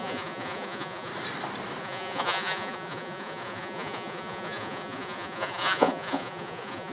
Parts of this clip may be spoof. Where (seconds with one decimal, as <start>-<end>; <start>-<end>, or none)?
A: 0.0-1.1; 1.8-6.9